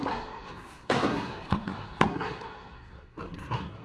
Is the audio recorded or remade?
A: remade